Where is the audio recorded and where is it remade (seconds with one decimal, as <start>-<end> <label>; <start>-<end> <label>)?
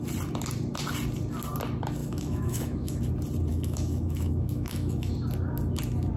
0.0-2.0 recorded; 2.0-3.0 remade; 3.0-3.5 recorded; 3.5-5.1 remade; 5.1-6.2 recorded